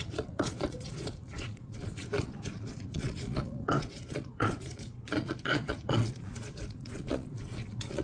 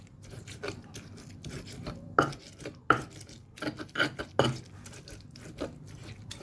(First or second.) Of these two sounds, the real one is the second